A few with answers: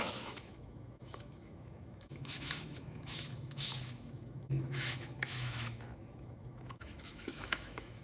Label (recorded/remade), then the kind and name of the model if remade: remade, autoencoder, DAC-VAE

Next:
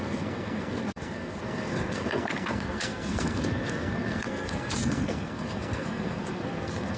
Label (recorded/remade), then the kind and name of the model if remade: remade, codec, SNAC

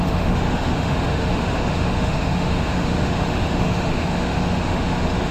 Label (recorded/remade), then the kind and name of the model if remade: remade, autoencoder, DAC-VAE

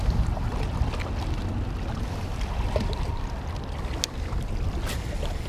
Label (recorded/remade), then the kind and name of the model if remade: recorded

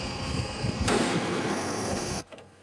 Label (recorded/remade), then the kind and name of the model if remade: remade, codec, SNAC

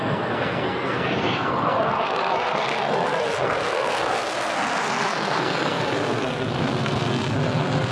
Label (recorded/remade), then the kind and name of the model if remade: remade, codec, SNAC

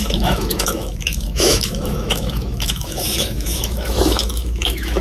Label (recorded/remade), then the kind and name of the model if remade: remade, autoencoder, DAC-VAE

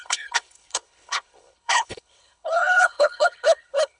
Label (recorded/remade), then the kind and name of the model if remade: remade, codec, HILCodec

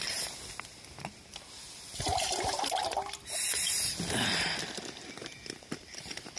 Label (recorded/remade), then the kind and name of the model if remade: recorded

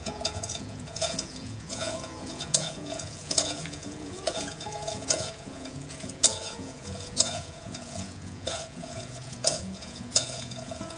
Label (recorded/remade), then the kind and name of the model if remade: remade, vocoder, Vocos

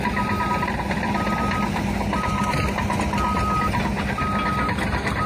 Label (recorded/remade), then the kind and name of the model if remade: recorded